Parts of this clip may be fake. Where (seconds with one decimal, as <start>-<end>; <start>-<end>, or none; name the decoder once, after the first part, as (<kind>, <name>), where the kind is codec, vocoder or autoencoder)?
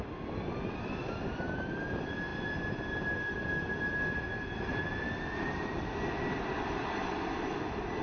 none